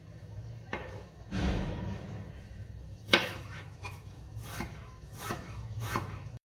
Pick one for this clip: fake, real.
fake